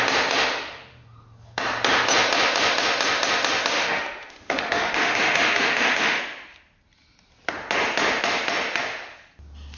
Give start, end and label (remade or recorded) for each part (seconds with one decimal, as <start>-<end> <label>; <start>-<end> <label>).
0.0-3.7 recorded; 3.7-6.2 remade; 6.2-9.8 recorded